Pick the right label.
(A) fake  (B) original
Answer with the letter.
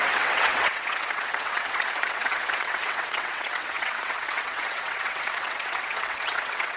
A